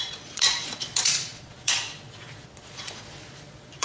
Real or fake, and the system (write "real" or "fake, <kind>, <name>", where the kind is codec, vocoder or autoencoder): fake, vocoder, Vocos